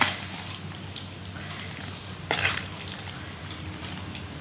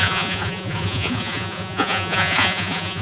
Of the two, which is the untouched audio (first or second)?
first